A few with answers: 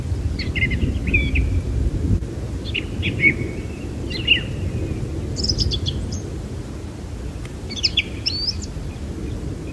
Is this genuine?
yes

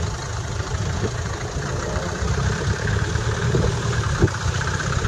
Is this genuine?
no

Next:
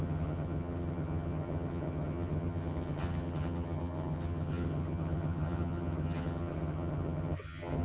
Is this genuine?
no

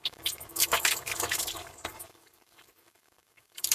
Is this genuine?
no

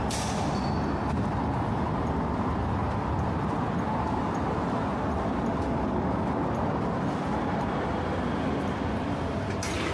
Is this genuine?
yes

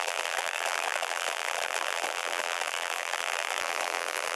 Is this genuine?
no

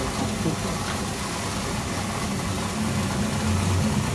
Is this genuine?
yes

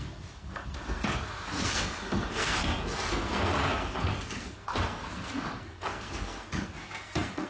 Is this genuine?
no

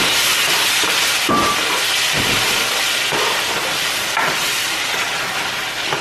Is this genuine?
yes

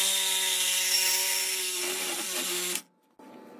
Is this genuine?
yes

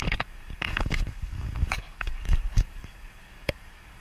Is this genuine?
no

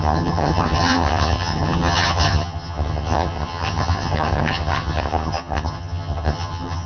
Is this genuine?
no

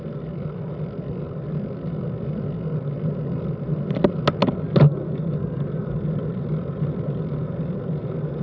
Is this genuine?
yes